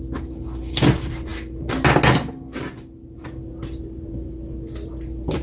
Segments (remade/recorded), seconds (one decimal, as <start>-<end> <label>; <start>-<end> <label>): 0.0-5.4 recorded